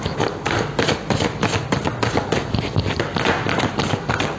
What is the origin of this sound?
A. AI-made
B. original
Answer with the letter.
B